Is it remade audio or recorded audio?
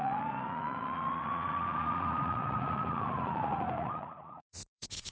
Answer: remade